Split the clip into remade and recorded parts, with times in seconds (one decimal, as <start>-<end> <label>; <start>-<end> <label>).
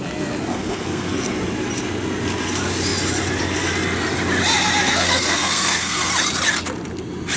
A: 0.0-0.5 recorded; 0.5-1.1 remade; 1.1-4.8 recorded; 4.8-6.1 remade; 6.1-7.4 recorded